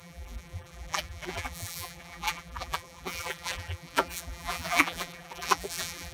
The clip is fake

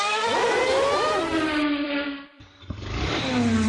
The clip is fake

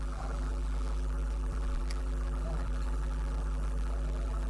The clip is fake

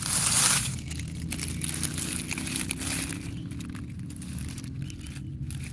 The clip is real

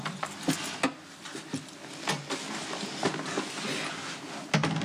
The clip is real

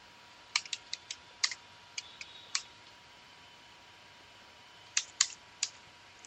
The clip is fake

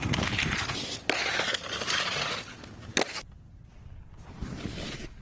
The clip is real